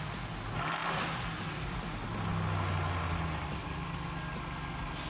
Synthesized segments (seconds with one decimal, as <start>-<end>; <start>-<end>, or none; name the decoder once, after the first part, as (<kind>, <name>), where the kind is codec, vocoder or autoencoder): none